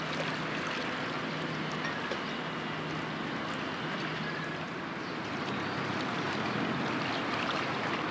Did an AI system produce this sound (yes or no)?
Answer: no